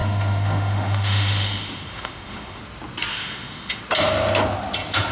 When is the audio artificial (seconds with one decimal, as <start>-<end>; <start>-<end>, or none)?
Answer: 0.0-2.6; 3.1-3.8